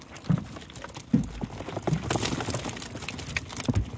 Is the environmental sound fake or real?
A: real